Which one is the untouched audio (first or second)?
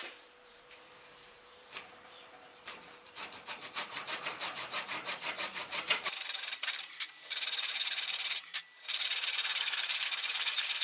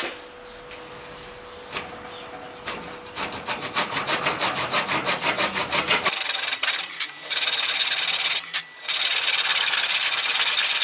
second